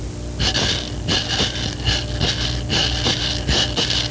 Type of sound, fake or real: real